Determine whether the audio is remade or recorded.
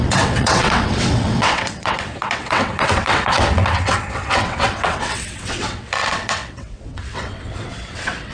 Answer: remade